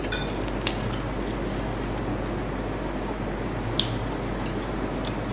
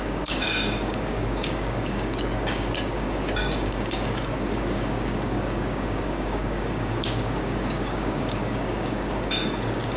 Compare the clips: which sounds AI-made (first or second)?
second